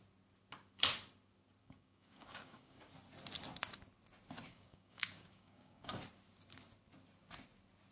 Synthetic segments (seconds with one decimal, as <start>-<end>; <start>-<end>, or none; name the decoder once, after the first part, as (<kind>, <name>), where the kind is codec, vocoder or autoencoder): 1.6-2.9 (codec, DAC); 4.5-6.0